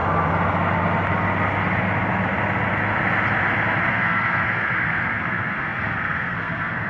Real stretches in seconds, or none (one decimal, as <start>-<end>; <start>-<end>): 0.0-3.9